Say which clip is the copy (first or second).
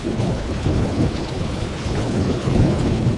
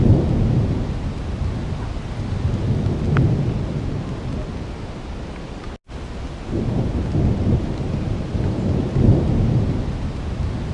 first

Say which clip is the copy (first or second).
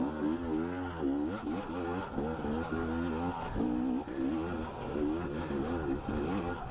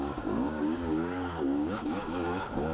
second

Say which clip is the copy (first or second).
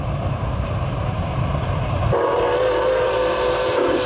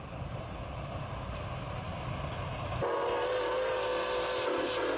first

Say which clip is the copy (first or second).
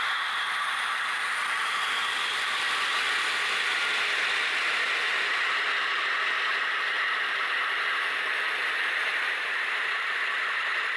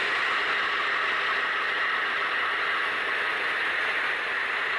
first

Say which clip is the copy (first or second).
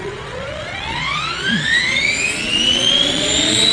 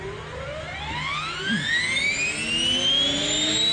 first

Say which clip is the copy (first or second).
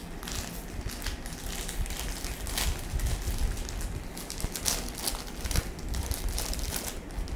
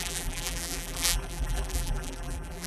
second